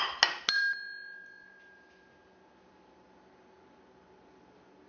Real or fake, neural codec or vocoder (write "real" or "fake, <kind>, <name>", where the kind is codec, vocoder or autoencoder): real